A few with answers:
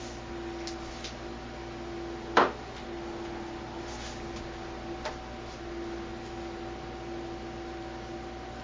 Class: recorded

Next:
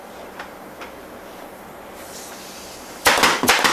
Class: recorded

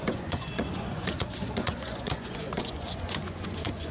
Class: remade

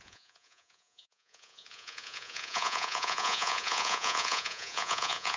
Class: remade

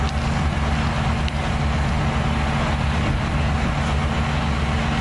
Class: recorded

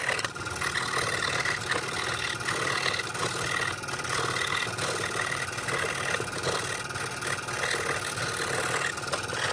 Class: recorded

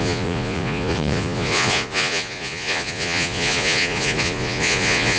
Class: remade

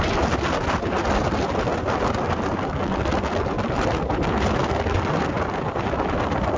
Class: recorded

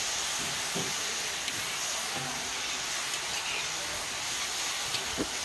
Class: recorded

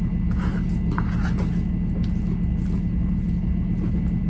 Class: recorded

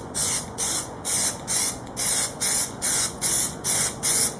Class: remade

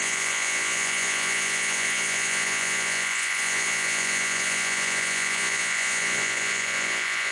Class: remade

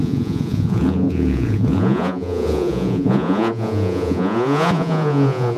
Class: remade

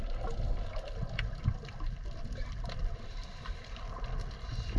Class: recorded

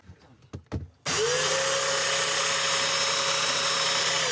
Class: recorded